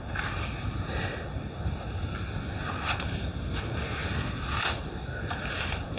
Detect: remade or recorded recorded